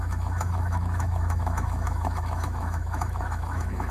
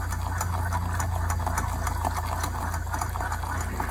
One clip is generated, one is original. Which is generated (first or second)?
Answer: first